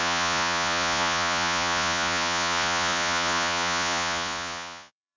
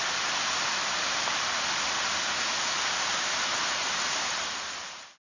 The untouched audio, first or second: second